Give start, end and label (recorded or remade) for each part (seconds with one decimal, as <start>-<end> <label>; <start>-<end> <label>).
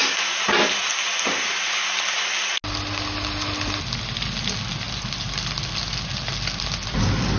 0.0-7.4 recorded